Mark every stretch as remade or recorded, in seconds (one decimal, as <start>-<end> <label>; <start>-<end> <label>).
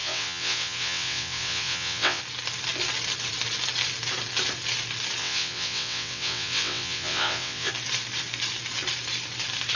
0.0-2.2 remade; 2.2-5.2 recorded; 5.2-7.7 remade; 7.7-9.8 recorded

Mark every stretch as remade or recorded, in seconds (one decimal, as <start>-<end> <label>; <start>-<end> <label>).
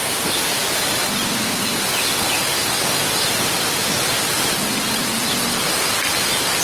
0.0-6.6 recorded